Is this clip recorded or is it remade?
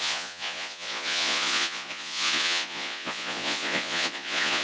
remade